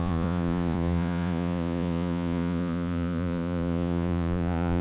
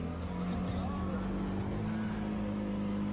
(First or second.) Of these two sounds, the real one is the second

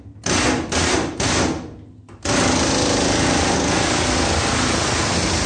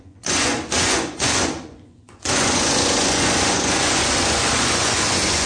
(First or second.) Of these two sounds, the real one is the first